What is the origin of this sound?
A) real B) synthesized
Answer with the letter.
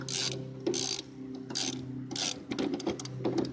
A